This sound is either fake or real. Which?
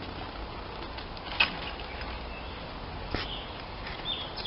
real